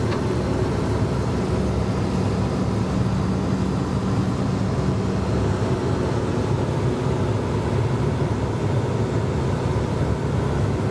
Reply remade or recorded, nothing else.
recorded